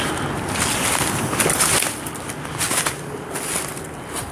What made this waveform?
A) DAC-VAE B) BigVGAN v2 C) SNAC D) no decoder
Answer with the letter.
D